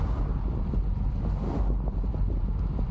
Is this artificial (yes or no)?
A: no